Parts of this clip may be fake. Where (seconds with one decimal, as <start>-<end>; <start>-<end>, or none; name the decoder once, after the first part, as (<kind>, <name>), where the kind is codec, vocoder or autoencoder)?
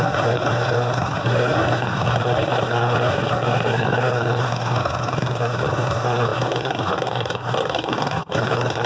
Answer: 0.0-8.9 (codec, SNAC)